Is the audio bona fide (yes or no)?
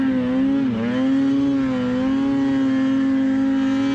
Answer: yes